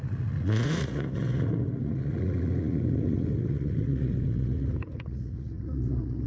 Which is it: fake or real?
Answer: fake